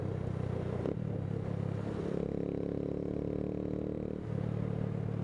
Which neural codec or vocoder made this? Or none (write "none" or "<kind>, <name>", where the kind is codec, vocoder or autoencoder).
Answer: none